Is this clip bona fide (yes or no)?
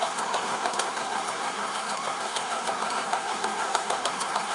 no